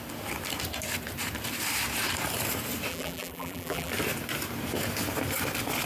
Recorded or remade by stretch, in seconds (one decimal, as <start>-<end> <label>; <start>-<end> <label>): 0.0-2.9 recorded; 2.9-3.9 remade; 3.9-5.9 recorded